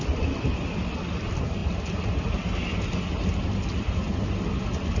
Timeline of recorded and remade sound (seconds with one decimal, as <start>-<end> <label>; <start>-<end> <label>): 0.0-5.0 recorded